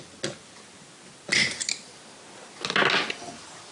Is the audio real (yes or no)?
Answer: yes